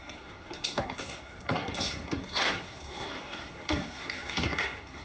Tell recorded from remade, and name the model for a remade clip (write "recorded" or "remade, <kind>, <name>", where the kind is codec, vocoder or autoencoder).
remade, codec, SNAC